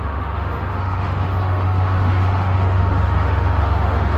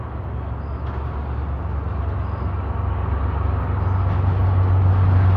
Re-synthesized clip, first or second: first